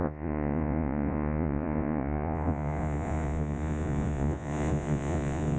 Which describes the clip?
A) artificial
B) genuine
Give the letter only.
A